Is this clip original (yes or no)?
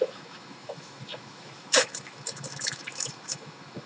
no